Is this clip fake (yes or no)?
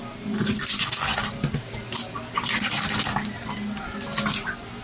no